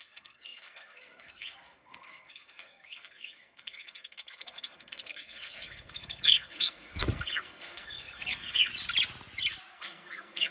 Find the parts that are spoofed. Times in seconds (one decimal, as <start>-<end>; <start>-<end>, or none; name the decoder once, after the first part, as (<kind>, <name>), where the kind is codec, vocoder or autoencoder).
0.0-8.7 (codec, SNAC); 9.7-10.5